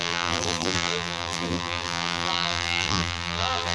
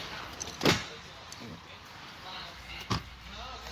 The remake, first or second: first